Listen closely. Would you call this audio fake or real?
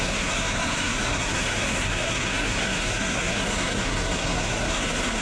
fake